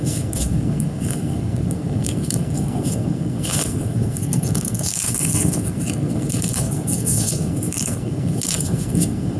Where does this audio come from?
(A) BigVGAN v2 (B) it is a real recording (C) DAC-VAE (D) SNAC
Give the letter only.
D